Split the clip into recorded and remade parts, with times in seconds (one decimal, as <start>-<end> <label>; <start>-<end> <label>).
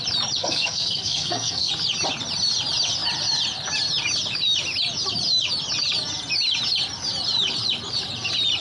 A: 0.0-0.4 recorded; 0.4-1.7 remade; 1.7-8.6 recorded